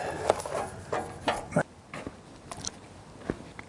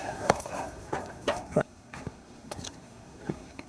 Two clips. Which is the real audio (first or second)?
first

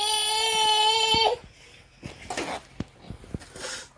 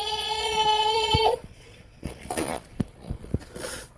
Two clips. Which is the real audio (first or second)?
first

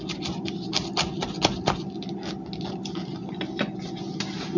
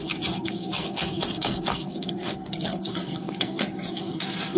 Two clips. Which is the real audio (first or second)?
first